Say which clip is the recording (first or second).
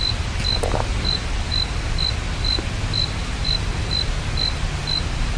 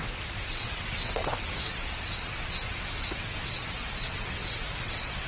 first